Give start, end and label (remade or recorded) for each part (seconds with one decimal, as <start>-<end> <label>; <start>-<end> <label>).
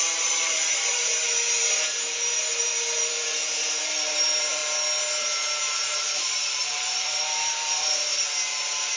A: 0.0-4.6 remade; 4.6-5.7 recorded; 5.7-9.0 remade